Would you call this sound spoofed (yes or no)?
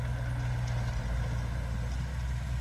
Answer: no